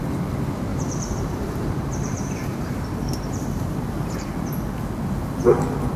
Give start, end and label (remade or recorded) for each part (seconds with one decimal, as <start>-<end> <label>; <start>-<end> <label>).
0.0-0.7 recorded; 0.7-4.3 remade; 4.3-6.0 recorded